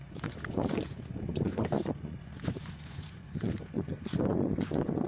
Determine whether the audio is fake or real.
fake